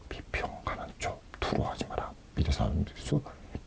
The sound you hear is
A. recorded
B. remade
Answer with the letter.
A